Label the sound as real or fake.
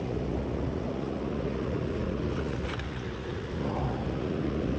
fake